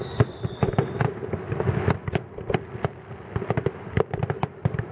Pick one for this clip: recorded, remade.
recorded